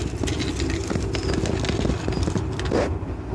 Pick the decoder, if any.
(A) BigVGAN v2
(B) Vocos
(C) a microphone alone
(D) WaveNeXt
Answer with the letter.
C